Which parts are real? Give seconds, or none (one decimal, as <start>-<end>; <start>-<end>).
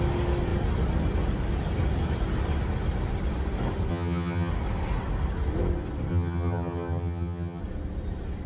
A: 0.0-3.9; 4.5-6.1; 7.6-8.5